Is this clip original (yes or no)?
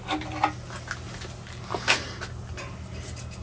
yes